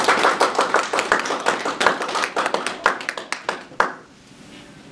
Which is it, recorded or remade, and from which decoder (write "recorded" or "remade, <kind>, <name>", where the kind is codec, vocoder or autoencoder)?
recorded